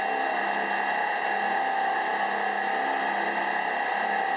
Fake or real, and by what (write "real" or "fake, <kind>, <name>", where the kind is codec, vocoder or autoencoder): real